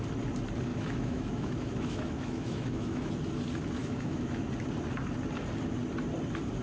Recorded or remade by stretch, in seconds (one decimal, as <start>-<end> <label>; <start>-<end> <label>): 0.0-0.7 recorded; 0.7-3.1 remade; 3.1-3.8 recorded; 3.8-4.5 remade; 4.5-6.6 recorded